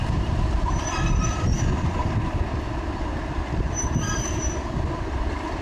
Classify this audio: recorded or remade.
remade